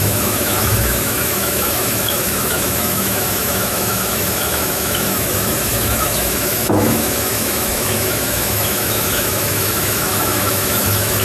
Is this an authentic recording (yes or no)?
no